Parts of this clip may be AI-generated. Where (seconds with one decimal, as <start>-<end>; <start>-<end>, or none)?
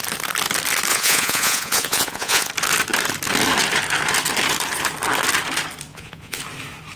0.9-2.5; 5.9-6.4